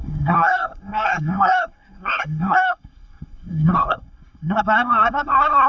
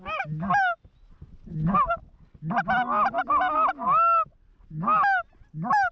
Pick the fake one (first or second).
first